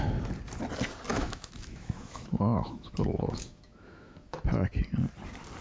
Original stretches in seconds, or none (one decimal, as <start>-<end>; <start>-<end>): 0.0-1.1; 4.4-5.6